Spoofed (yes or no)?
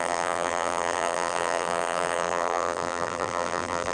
yes